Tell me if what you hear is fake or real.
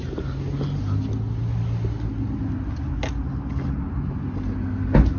real